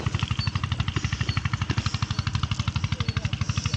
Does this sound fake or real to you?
real